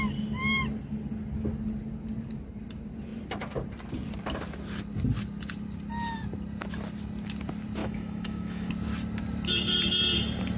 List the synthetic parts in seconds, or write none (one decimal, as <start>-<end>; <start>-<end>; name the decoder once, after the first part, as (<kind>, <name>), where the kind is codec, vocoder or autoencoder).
7.8-8.7 (autoencoder, DAC-VAE)